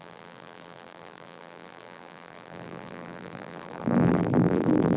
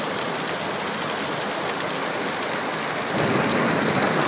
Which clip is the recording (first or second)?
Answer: second